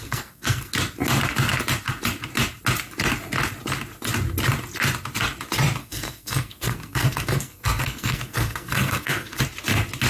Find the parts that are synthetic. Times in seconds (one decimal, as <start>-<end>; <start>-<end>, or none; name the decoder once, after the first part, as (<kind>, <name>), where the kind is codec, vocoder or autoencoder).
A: 0.0-0.7 (codec, SNAC); 5.8-9.4